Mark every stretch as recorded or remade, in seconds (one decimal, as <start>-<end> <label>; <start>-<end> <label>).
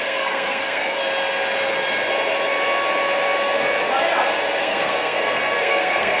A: 0.0-1.0 remade; 1.0-4.6 recorded; 4.6-6.2 remade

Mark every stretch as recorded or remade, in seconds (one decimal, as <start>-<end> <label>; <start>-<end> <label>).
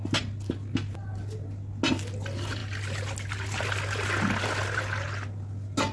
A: 0.0-5.9 recorded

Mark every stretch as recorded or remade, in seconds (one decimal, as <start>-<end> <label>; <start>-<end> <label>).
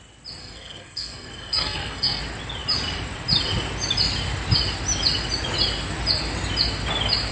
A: 0.0-0.4 recorded; 0.4-2.2 remade; 2.2-7.3 recorded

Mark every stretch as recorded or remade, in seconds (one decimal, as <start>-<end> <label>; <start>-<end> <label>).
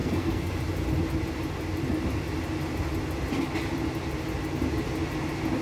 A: 0.0-0.5 remade; 0.5-5.6 recorded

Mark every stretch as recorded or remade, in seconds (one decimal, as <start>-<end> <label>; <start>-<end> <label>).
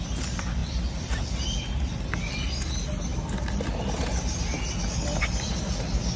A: 0.0-6.2 recorded